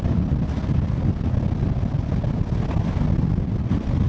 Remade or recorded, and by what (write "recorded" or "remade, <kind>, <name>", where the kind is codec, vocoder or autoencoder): recorded